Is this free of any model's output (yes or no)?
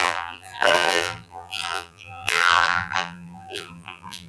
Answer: no